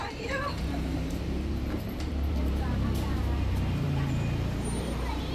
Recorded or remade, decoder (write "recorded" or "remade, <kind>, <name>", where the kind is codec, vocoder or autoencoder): remade, vocoder, BigVGAN v2